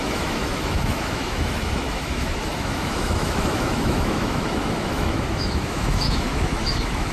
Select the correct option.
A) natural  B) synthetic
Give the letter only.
B